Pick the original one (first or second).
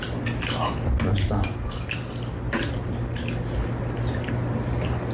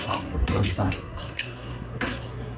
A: first